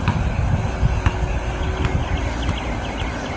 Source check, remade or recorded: recorded